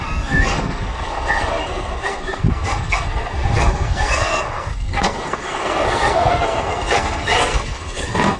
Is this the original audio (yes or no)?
no